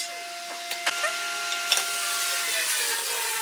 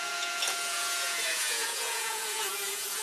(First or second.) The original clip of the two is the first